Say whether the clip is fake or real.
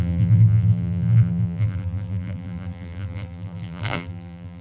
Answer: fake